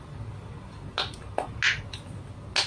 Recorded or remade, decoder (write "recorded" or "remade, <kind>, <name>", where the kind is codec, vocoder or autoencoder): recorded